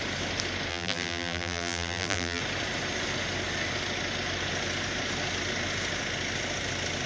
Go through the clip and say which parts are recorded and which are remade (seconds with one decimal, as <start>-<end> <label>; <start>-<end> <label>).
0.0-0.7 recorded; 0.7-2.4 remade; 2.4-7.1 recorded